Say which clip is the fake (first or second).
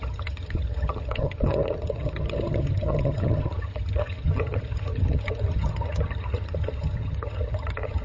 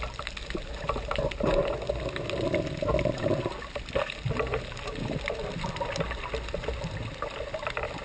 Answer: first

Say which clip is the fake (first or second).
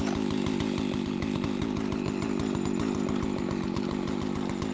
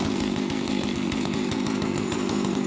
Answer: second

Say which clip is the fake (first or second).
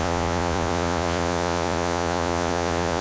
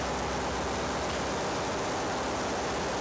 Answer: first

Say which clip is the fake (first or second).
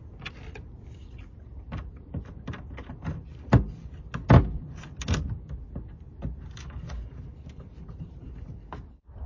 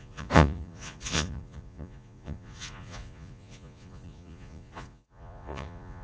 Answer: second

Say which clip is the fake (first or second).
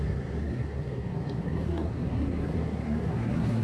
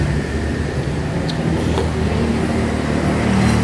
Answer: first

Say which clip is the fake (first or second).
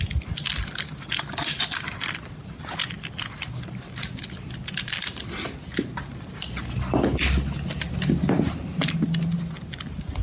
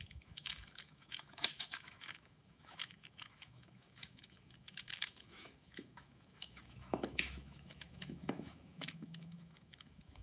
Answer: second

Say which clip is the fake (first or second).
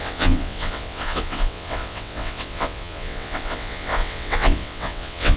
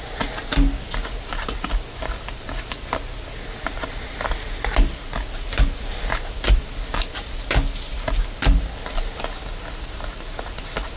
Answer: first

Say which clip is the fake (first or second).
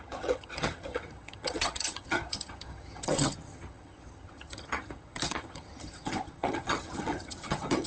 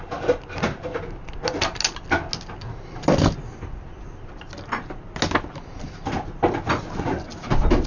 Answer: first